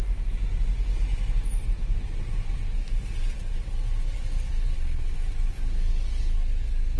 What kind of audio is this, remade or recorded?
recorded